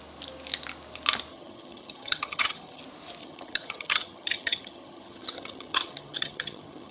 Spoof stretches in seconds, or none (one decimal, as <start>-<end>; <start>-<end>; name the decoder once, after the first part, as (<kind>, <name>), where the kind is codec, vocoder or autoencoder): 1.3-2.8 (vocoder, HiFi-GAN); 3.2-6.9